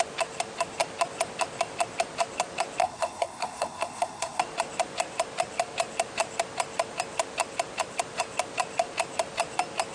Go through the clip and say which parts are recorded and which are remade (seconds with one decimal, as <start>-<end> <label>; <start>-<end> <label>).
0.0-2.8 recorded; 2.8-4.4 remade; 4.4-9.9 recorded